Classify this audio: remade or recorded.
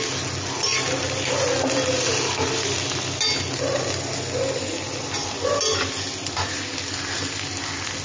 recorded